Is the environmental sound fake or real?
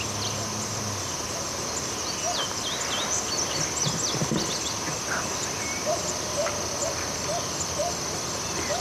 fake